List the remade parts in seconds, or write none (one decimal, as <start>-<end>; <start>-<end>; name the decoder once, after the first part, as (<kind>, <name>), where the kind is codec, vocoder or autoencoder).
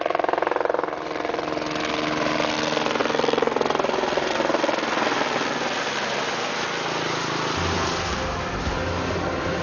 none